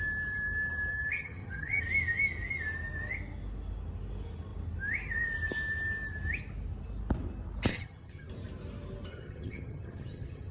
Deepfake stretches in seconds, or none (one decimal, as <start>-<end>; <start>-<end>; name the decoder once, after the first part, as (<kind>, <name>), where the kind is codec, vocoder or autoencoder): 0.9-1.8 (vocoder, HiFi-GAN); 7.7-8.3; 9.1-10.5